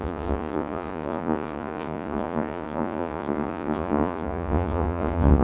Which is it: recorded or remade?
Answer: remade